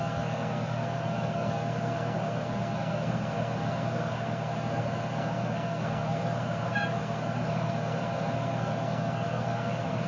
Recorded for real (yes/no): no